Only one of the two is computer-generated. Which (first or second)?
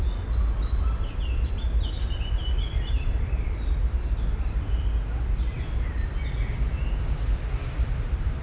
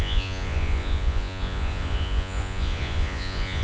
second